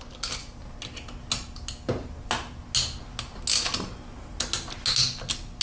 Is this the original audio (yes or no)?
yes